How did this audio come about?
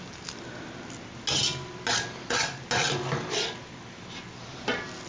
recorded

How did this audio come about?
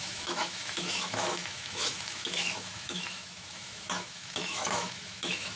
remade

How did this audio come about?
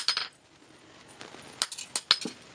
recorded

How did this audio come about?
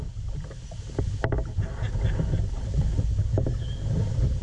recorded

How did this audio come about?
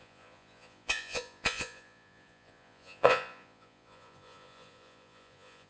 remade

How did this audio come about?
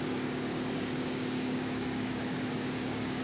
remade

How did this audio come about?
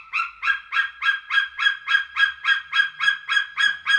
remade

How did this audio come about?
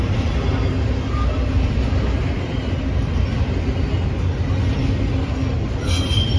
recorded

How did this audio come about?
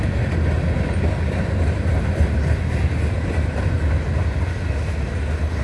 recorded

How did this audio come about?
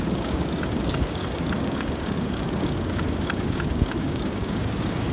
remade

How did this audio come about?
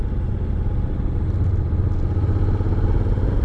recorded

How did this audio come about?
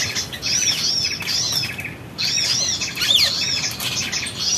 recorded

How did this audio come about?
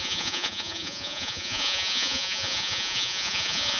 remade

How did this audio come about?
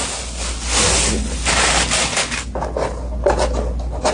recorded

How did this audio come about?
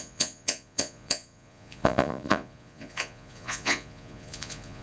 remade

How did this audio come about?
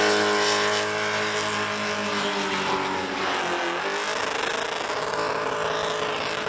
recorded